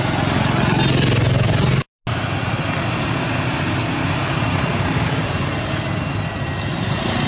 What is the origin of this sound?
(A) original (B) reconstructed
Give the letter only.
A